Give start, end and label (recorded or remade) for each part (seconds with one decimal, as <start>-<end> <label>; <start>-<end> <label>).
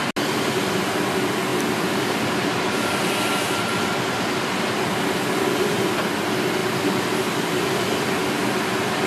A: 0.0-9.1 recorded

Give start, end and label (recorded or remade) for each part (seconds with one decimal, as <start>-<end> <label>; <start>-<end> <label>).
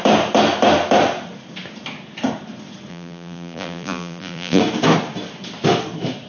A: 0.0-2.9 recorded; 2.9-4.6 remade; 4.6-6.3 recorded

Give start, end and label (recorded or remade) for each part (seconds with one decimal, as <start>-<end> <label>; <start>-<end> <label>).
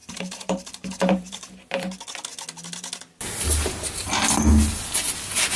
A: 0.0-1.5 remade; 1.5-5.6 recorded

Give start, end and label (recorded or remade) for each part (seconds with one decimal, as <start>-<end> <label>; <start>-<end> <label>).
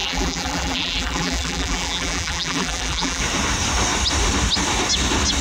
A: 0.0-3.2 remade; 3.2-5.4 recorded